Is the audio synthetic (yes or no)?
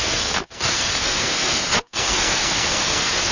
yes